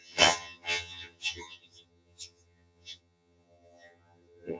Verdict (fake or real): fake